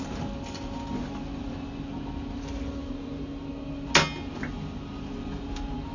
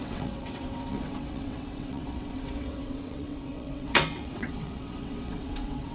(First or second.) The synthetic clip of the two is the second